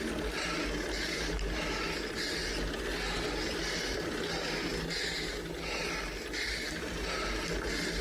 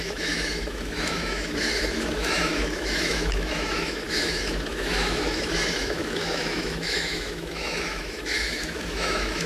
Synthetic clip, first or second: second